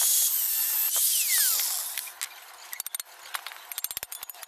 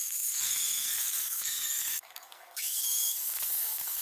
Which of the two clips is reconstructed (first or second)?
second